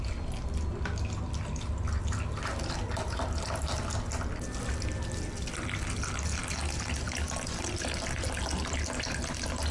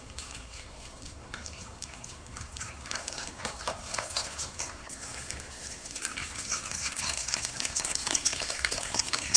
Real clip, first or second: first